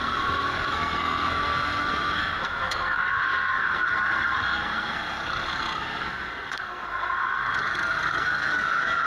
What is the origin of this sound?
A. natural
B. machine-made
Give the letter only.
B